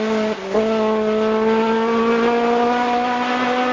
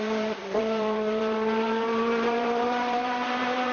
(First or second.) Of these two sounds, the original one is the first